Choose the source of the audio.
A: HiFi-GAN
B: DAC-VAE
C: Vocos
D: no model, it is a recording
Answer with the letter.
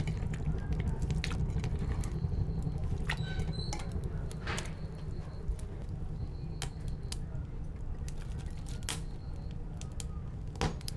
D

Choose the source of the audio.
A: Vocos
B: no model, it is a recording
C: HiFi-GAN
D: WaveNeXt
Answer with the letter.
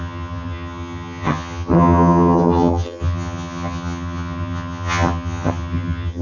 C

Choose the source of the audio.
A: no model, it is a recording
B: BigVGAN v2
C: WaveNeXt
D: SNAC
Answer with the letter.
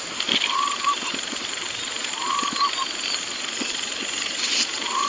B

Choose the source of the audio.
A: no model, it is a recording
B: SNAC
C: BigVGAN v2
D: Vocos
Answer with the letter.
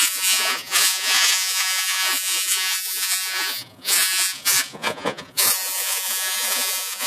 D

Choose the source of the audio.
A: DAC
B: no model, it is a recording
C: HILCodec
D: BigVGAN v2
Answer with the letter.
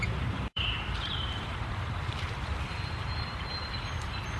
D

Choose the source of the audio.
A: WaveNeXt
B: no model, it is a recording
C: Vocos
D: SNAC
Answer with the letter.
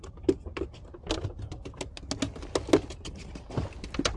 B